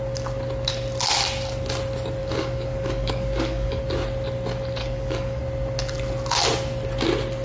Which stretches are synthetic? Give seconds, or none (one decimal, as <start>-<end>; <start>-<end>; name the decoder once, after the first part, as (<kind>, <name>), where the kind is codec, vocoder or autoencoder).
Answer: 2.2-3.8 (codec, DAC); 4.8-5.4